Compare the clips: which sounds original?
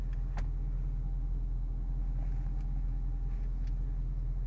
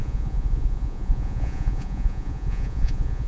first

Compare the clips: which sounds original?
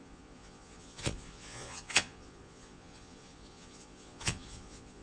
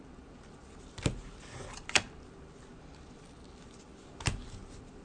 second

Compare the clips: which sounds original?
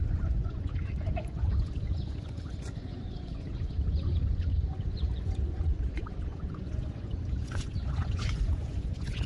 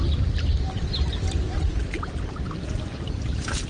second